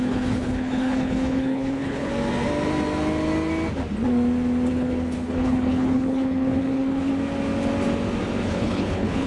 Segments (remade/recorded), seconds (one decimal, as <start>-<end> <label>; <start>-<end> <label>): 0.0-2.1 remade; 2.1-4.7 recorded; 4.7-7.1 remade; 7.1-8.5 recorded; 8.5-9.3 remade